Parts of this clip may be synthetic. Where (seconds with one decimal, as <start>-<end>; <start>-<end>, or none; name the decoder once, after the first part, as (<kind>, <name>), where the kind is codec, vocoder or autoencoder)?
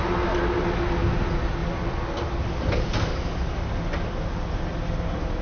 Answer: 1.6-2.7 (vocoder, BigVGAN v2)